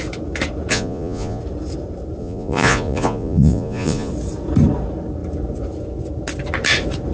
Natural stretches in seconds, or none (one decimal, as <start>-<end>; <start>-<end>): 0.0-0.7; 1.4-2.2; 4.1-7.1